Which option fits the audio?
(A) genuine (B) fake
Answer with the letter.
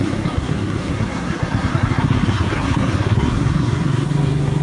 B